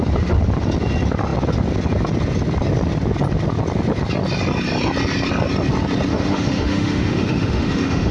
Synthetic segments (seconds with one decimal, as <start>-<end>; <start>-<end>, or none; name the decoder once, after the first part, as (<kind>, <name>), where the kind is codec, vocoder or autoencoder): 6.1-8.1 (autoencoder, DAC-VAE)